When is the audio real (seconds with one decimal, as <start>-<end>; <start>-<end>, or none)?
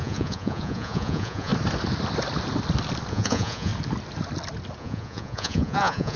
1.5-3.1; 3.7-4.8